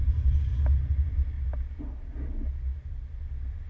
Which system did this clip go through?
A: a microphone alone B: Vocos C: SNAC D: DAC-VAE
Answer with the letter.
A